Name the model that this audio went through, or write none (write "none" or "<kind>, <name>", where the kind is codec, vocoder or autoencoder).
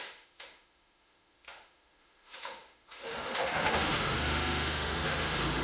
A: autoencoder, DAC-VAE